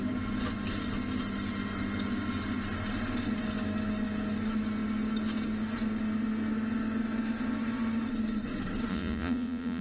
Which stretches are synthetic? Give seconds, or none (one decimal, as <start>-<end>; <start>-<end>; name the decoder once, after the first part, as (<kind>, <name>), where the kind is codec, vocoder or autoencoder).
8.9-9.8 (vocoder, Vocos)